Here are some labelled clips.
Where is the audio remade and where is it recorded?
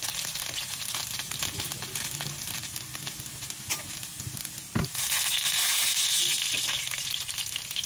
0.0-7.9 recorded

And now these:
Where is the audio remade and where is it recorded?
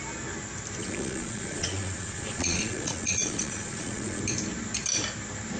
0.0-0.8 recorded; 0.8-4.2 remade; 4.2-5.6 recorded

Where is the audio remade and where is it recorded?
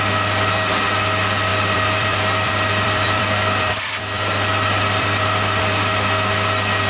0.0-1.5 recorded; 1.5-5.6 remade; 5.6-6.9 recorded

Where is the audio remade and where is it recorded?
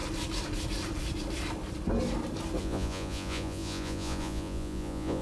0.0-2.6 recorded; 2.6-5.2 remade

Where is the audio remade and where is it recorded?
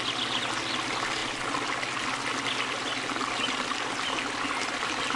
0.0-5.2 recorded